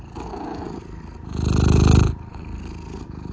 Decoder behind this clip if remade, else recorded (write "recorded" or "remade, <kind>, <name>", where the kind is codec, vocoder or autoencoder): recorded